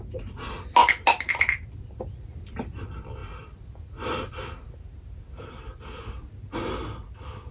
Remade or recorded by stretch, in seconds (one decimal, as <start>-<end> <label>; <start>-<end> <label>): 0.0-7.5 recorded